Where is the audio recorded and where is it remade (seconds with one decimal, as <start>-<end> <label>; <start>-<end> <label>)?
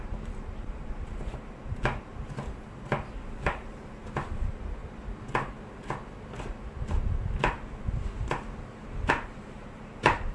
0.0-2.1 remade; 2.1-3.1 recorded; 3.1-4.8 remade; 4.8-9.1 recorded; 9.1-10.3 remade